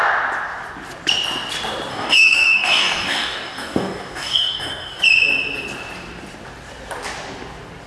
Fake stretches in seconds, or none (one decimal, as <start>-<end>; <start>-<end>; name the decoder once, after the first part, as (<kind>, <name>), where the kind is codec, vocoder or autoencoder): 1.9-5.0 (codec, DAC)